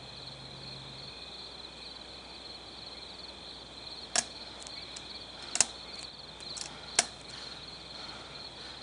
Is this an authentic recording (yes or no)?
yes